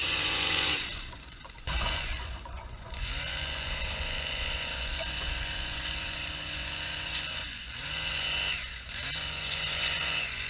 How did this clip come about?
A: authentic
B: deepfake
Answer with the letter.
B